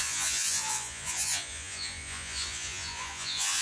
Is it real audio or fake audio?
fake